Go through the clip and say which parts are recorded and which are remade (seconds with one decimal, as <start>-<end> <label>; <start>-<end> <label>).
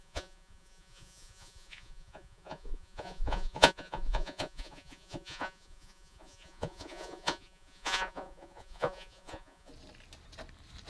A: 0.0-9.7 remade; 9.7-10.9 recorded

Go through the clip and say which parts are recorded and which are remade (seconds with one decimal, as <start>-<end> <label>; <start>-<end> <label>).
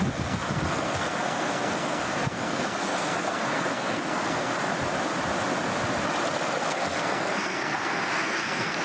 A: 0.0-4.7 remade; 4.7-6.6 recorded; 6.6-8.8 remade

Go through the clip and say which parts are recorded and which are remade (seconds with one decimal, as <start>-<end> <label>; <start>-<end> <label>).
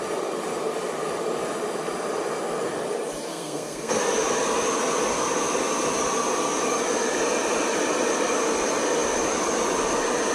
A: 0.0-3.3 recorded; 3.3-4.0 remade; 4.0-10.3 recorded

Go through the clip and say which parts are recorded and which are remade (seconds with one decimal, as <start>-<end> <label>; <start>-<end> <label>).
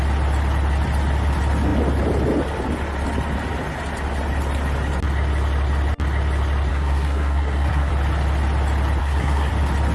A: 0.0-6.7 recorded; 6.7-7.9 remade; 7.9-9.0 recorded; 9.0-9.5 remade; 9.5-9.9 recorded